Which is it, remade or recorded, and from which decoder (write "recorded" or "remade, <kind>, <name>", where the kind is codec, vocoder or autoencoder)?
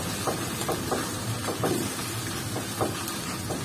recorded